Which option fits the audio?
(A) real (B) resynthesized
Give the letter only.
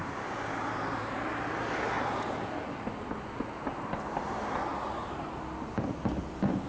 A